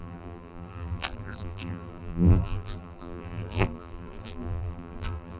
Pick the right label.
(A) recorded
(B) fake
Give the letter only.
B